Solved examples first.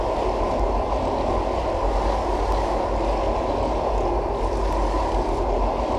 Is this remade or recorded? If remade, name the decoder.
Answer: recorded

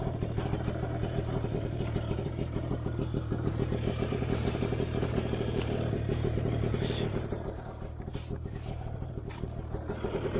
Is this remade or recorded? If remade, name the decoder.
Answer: remade, vocoder, BigVGAN v2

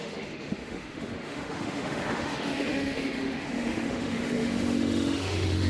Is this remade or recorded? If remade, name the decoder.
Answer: remade, autoencoder, DAC-VAE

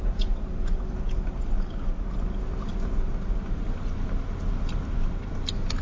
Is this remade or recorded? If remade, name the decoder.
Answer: recorded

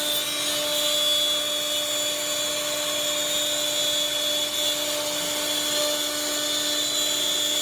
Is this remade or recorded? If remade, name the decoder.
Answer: recorded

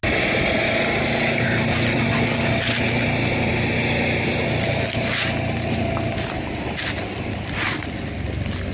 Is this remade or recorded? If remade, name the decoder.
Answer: recorded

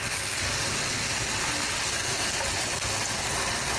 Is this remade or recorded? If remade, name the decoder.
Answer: recorded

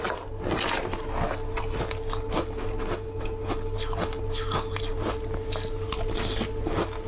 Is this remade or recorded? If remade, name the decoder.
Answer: recorded